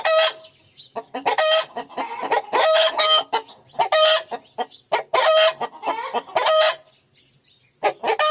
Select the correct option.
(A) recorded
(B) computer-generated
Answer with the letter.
A